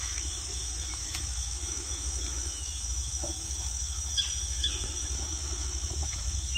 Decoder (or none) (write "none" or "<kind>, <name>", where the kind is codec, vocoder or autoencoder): autoencoder, DAC-VAE